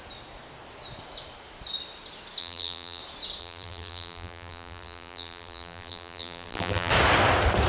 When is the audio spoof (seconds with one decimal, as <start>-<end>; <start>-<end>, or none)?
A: 2.4-3.0; 3.4-6.9